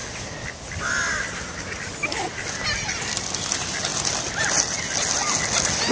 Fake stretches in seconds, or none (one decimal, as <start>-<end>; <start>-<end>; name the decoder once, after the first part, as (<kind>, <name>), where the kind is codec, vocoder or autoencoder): none